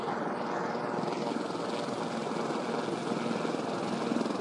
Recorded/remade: recorded